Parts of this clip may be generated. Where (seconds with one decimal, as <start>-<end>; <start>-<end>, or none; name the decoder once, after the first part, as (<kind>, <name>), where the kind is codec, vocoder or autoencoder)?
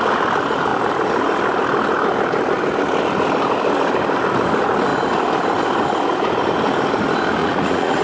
7.4-8.0 (vocoder, Vocos)